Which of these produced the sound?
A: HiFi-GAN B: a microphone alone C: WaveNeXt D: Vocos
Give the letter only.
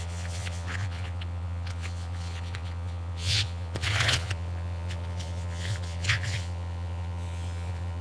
D